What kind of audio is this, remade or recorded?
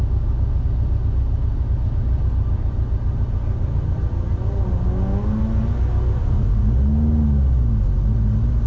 recorded